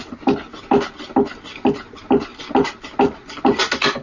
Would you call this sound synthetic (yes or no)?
no